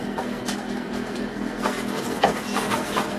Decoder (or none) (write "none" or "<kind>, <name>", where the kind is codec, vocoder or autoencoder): codec, SNAC